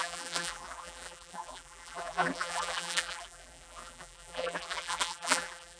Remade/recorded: remade